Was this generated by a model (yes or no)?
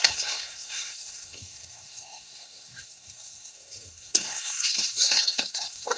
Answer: yes